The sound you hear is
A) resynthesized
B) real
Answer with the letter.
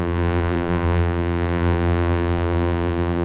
A